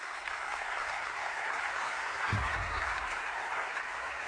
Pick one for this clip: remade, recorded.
remade